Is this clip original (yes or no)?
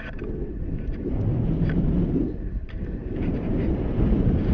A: no